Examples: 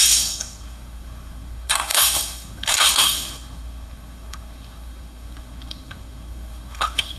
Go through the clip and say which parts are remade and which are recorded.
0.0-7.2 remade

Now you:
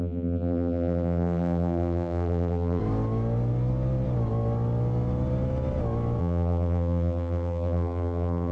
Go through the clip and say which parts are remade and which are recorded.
0.0-2.8 remade; 2.8-6.2 recorded; 6.2-8.5 remade

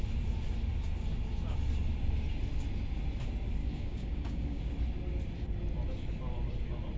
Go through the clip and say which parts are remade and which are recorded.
0.0-3.6 recorded; 3.6-4.6 remade; 4.6-7.0 recorded

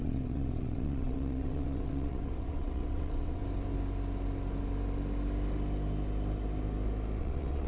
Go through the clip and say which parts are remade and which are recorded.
0.0-3.4 remade; 3.4-7.2 recorded; 7.2-7.7 remade

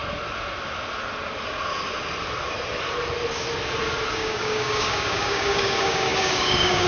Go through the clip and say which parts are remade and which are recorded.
0.0-4.1 recorded; 4.1-6.9 remade